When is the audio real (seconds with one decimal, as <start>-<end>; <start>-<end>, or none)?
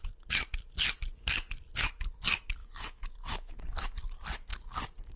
0.0-2.6; 3.6-5.2